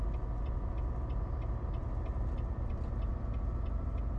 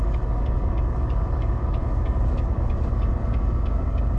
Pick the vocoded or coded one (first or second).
second